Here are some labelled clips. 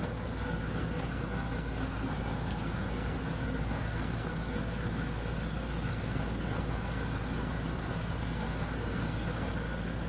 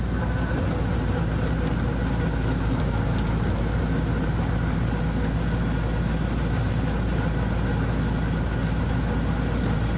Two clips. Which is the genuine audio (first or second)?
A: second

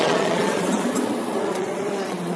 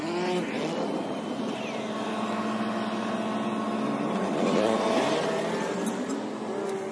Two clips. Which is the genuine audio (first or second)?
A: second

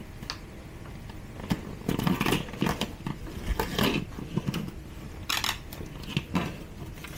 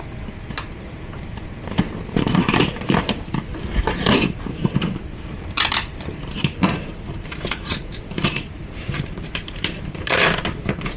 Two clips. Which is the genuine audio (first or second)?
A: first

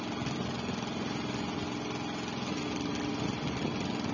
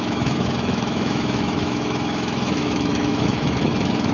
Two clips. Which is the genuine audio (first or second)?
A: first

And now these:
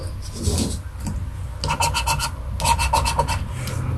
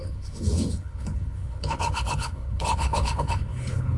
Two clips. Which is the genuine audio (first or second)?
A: first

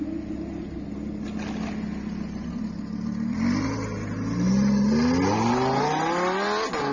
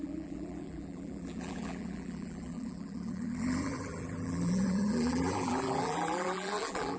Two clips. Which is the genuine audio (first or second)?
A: first